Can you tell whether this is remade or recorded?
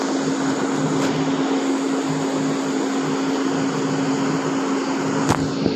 recorded